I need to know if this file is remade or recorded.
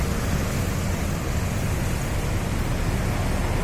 recorded